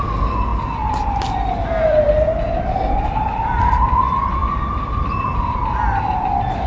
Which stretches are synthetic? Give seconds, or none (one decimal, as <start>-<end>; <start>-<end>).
0.5-4.0; 4.4-5.0